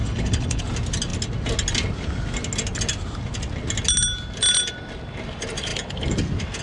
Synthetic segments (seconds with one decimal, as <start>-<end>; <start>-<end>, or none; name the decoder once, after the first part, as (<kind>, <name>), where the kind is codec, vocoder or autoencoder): 0.0-0.6 (codec, HILCodec)